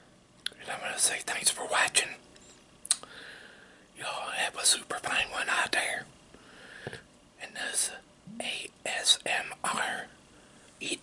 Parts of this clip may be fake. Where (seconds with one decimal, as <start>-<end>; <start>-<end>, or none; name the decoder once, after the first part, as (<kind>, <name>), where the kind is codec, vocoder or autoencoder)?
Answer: 2.3-7.3 (vocoder, BigVGAN v2); 9.6-10.3